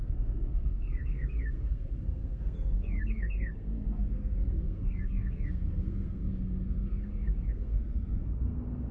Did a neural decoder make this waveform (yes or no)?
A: yes